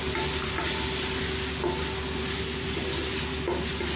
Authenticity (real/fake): real